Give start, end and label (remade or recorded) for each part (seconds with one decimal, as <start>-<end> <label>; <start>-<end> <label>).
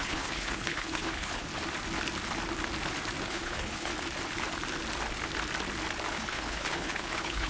0.0-1.5 remade; 1.5-3.2 recorded; 3.2-3.9 remade; 3.9-6.1 recorded; 6.1-7.5 remade